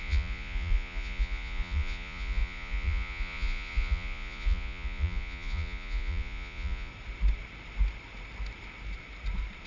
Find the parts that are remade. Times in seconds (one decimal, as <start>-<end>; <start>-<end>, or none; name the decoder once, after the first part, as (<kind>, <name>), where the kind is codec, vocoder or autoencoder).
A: 0.0-6.9 (vocoder, Vocos)